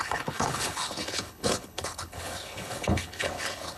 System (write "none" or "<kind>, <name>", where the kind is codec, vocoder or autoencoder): codec, HILCodec